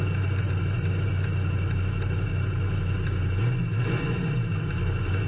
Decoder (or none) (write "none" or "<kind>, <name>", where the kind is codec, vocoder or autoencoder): none